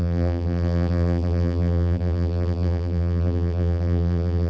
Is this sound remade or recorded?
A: remade